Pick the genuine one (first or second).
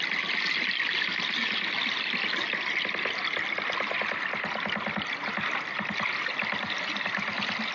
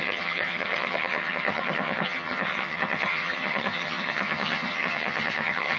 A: first